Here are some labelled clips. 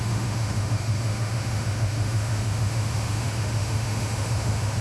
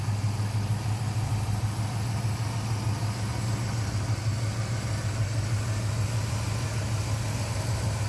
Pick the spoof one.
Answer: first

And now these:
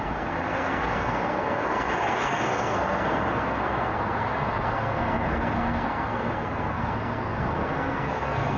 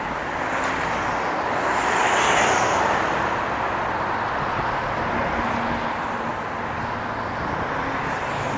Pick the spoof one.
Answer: first